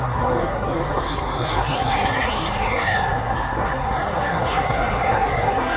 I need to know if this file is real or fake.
fake